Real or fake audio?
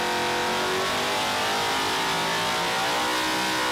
real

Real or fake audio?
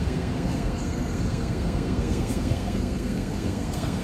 fake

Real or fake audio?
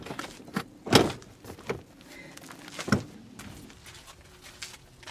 real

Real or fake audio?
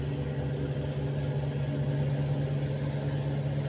real